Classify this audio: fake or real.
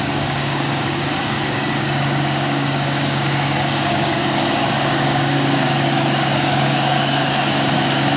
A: fake